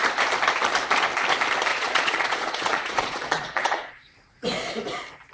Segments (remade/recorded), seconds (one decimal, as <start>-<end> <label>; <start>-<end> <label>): 0.0-1.7 recorded; 1.7-4.1 remade; 4.1-5.3 recorded